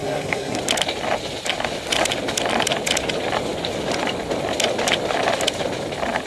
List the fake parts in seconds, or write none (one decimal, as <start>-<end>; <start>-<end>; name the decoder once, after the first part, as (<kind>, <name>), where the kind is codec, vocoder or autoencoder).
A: 0.0-0.6 (codec, SNAC)